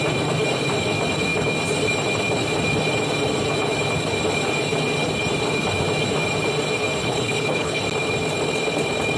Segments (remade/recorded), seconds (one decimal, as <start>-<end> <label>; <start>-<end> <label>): 0.0-7.0 recorded; 7.0-7.8 remade; 7.8-9.2 recorded